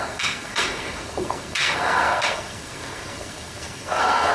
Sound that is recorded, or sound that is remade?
remade